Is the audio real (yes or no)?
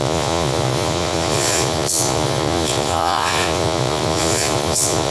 no